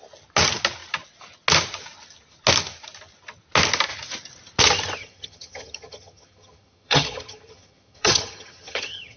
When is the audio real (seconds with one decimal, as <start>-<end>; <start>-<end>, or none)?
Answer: 0.0-5.0